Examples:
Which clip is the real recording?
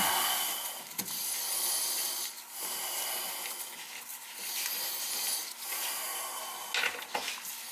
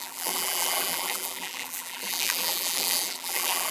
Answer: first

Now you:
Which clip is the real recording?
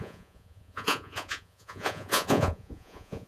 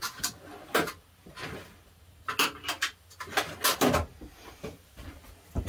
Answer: second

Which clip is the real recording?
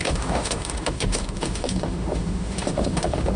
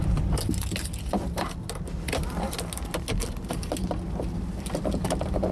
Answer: second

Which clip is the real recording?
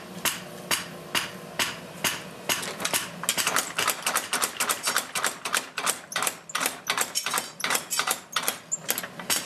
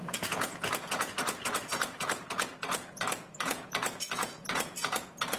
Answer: first